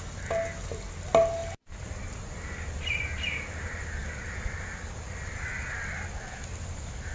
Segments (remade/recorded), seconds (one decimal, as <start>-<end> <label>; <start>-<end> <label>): 0.0-7.1 recorded